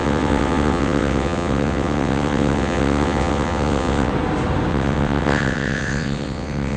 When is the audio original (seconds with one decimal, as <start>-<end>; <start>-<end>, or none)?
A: 4.1-4.7